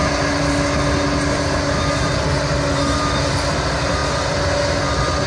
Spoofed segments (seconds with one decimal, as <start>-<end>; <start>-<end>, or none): none